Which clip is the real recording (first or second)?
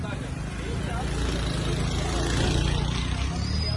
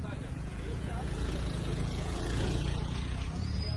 first